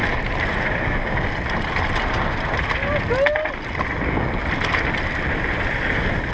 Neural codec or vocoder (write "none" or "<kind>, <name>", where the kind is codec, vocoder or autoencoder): none